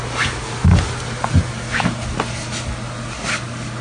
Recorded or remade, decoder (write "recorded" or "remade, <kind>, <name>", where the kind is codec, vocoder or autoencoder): recorded